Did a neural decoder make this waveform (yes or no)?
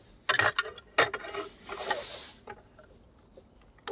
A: no